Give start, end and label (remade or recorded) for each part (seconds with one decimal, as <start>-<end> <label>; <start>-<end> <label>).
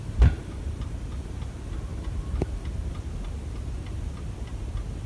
0.0-5.1 recorded